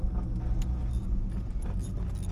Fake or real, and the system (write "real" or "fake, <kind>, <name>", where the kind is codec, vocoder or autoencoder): real